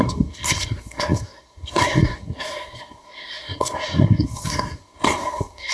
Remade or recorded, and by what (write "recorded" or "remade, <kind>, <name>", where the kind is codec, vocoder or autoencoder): remade, codec, SNAC